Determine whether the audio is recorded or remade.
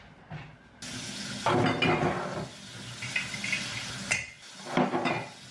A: recorded